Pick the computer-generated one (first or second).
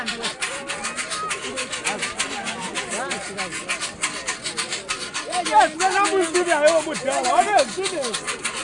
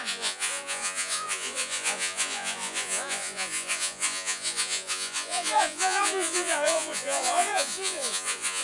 second